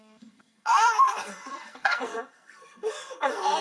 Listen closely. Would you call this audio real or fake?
fake